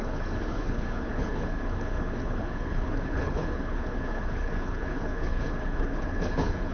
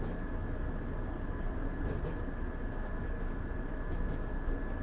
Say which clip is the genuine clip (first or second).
second